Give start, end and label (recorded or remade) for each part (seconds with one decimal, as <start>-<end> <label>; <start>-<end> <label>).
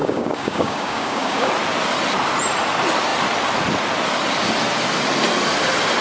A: 0.0-1.5 remade; 1.5-6.0 recorded